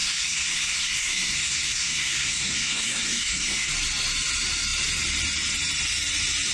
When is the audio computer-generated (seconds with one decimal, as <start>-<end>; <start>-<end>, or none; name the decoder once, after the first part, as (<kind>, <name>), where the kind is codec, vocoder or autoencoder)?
0.0-3.7 (codec, SNAC)